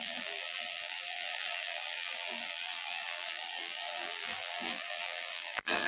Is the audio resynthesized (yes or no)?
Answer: yes